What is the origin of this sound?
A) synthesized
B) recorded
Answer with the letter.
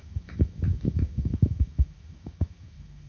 A